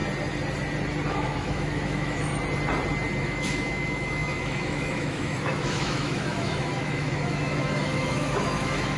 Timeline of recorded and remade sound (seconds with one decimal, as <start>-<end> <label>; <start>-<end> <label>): 0.0-1.1 recorded; 1.1-2.3 remade; 2.3-3.2 recorded; 3.2-9.0 remade